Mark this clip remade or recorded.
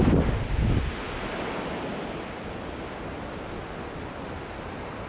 recorded